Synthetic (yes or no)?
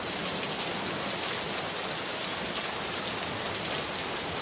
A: no